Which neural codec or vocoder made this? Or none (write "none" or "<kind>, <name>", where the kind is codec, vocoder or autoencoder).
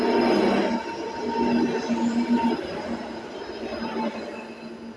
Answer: none